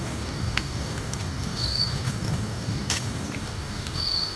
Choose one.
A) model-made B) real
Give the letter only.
A